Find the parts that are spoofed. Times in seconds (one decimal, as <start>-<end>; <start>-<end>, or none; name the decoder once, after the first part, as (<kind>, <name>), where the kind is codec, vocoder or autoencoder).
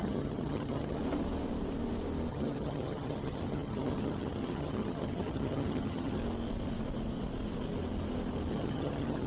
0.0-1.0 (vocoder, HiFi-GAN); 2.3-6.2; 8.5-9.3